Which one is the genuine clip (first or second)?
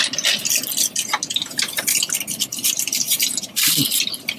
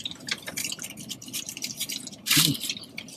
first